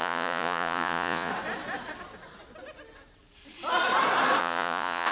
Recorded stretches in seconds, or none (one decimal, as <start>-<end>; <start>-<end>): 1.3-4.4